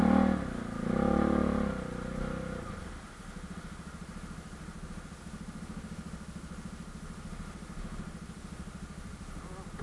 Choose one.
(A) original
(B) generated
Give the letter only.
A